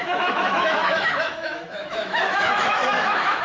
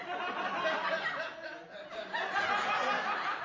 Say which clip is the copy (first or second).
first